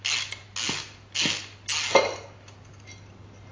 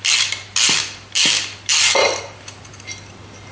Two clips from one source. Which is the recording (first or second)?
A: first